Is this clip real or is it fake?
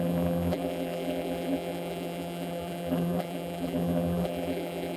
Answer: fake